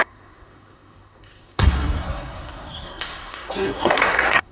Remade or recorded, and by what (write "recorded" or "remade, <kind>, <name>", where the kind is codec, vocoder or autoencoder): remade, codec, SNAC